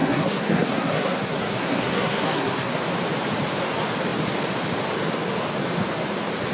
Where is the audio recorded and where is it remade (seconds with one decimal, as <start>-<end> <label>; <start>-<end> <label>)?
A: 0.0-2.8 remade; 2.8-6.5 recorded